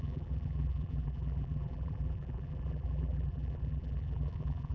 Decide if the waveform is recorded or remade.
remade